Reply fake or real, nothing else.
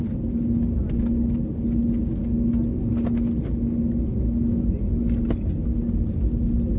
real